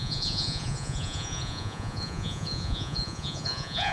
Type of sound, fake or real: fake